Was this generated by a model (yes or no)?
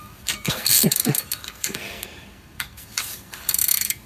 yes